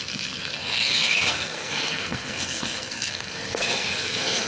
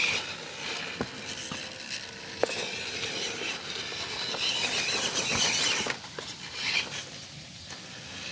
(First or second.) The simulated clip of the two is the first